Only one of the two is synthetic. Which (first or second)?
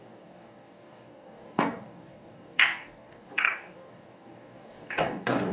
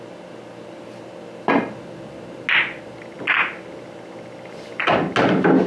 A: first